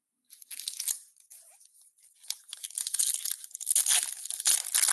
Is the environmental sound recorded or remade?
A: recorded